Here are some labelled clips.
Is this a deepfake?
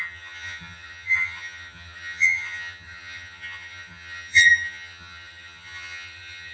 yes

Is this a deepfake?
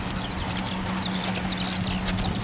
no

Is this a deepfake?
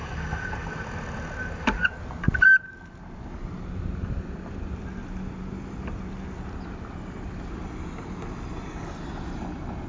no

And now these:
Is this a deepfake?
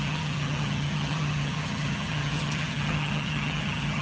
yes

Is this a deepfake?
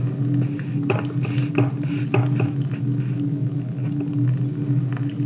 no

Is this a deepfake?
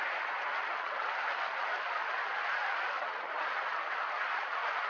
no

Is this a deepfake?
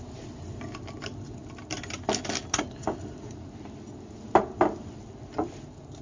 no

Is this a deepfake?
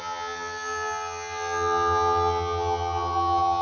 yes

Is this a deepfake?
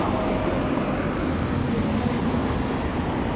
no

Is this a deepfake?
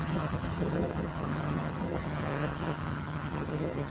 yes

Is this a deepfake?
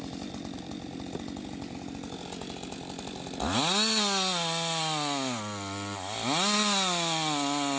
no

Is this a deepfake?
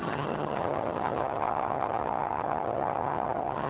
yes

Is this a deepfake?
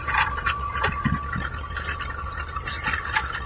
no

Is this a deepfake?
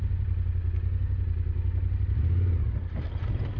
no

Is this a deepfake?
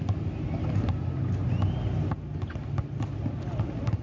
no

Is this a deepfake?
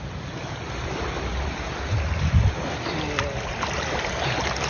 no